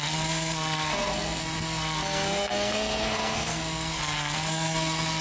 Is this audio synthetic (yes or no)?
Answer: yes